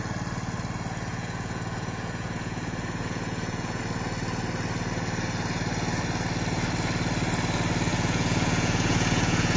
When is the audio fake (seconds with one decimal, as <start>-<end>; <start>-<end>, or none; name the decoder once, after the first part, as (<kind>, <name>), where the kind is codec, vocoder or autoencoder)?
1.1-3.8 (vocoder, Vocos); 7.9-9.6